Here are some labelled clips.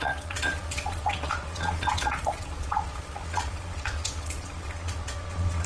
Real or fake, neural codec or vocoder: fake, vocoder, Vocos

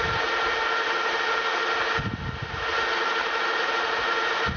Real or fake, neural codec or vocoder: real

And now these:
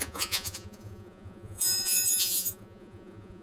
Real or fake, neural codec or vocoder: fake, vocoder, Vocos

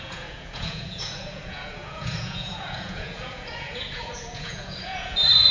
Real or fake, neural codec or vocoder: fake, vocoder, Vocos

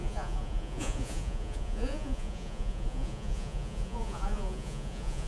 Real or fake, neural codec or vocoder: fake, vocoder, Vocos